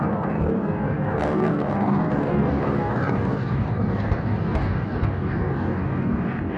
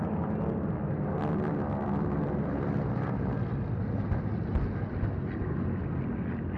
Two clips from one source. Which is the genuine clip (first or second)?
second